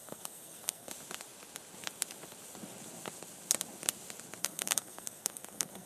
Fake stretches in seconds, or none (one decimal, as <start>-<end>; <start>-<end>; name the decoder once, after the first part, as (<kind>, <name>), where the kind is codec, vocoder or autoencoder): 0.0-0.9 (codec, SNAC); 4.4-5.9